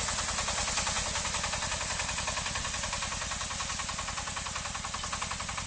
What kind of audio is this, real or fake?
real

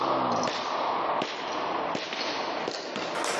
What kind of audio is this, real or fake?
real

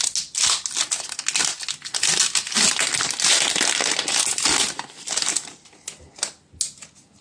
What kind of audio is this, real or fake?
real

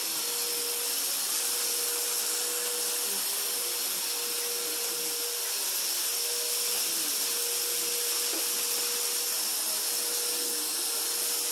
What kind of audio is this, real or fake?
real